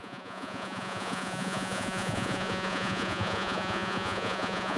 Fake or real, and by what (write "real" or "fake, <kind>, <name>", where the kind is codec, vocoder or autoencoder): fake, vocoder, Vocos